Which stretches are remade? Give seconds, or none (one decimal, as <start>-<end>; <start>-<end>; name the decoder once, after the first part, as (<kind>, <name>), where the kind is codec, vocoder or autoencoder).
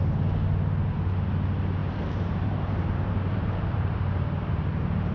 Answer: 1.8-5.1 (vocoder, BigVGAN v2)